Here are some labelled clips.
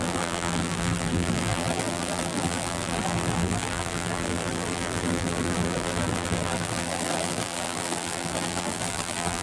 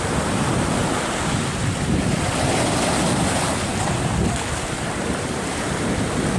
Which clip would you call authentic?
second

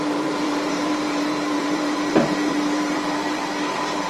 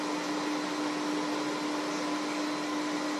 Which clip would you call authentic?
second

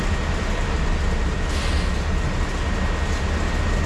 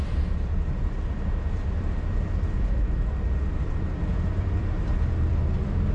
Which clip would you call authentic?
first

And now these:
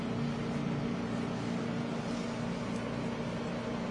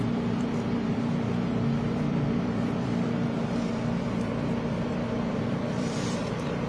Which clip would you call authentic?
first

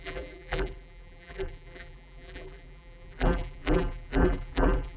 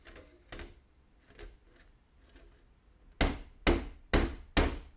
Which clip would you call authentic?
second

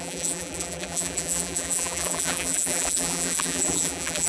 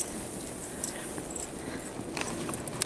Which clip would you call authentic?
second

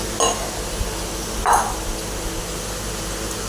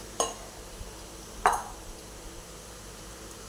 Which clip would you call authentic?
first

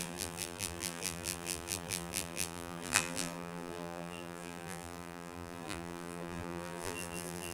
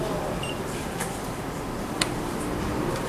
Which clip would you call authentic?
second